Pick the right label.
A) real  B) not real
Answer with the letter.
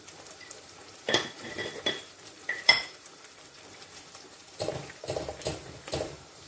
B